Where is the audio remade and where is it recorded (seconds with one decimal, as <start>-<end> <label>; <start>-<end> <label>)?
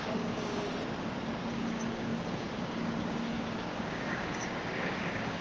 0.0-0.7 remade; 0.7-1.5 recorded; 1.5-5.4 remade